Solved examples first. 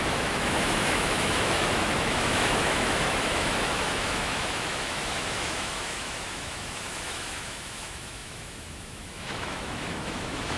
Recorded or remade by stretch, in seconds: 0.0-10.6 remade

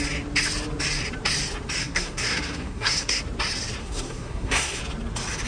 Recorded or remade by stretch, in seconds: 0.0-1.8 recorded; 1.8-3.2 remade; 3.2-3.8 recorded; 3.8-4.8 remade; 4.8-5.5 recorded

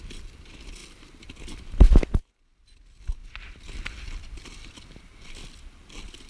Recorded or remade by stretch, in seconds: 0.0-6.3 recorded

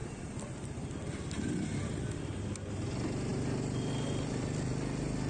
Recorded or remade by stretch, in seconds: 0.0-5.3 recorded

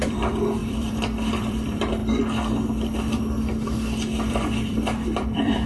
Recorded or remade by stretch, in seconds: 0.0-2.0 remade; 2.0-4.3 recorded; 4.3-5.7 remade

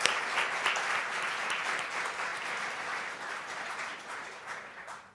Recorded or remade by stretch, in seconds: 0.0-2.3 recorded; 2.3-5.1 remade

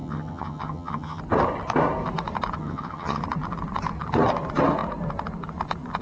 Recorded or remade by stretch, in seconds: 0.0-1.2 remade; 1.2-2.6 recorded; 2.6-3.2 remade; 3.2-6.0 recorded

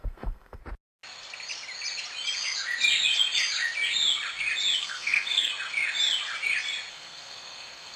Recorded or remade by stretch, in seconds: 0.0-0.6 remade; 0.6-4.8 recorded; 4.8-5.5 remade; 5.5-6.9 recorded; 6.9-8.0 remade